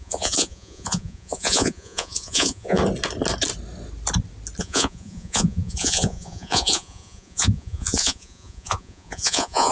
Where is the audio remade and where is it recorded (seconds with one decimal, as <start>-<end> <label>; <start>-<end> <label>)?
0.0-2.8 remade; 2.8-4.6 recorded; 4.6-9.7 remade